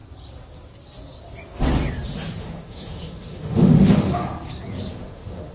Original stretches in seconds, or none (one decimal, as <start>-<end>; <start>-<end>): 0.0-2.4; 4.2-4.9